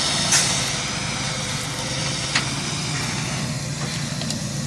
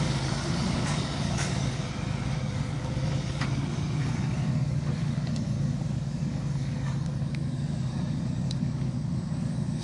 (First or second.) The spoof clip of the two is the second